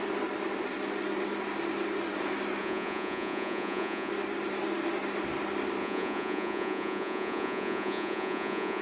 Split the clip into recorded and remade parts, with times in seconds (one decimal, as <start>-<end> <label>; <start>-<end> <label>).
0.0-2.6 recorded; 2.6-4.1 remade; 4.1-5.8 recorded; 5.8-8.8 remade